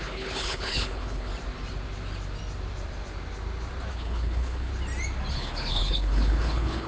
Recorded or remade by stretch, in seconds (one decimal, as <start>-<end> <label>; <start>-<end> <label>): 0.0-1.3 remade; 1.3-3.9 recorded; 3.9-4.7 remade; 4.7-5.3 recorded; 5.3-6.9 remade